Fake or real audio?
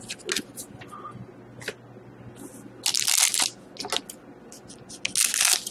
real